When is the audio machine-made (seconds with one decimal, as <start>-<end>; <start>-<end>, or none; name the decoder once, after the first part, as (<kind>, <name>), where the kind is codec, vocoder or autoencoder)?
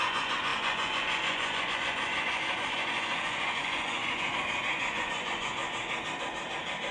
0.0-5.6 (vocoder, Vocos)